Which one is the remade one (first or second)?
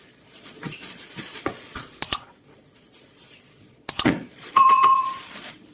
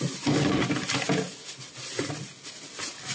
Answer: first